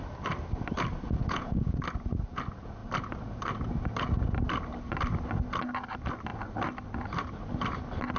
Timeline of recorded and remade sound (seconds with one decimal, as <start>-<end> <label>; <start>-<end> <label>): 0.0-1.2 recorded; 1.2-1.8 remade; 1.8-8.2 recorded